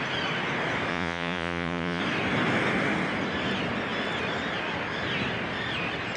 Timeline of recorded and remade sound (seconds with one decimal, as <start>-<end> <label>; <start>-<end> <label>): 0.0-0.9 recorded; 0.9-2.0 remade; 2.0-6.2 recorded